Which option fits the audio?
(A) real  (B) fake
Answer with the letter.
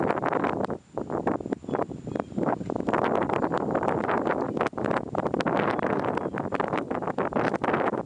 A